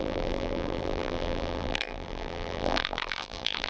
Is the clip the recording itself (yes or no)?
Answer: no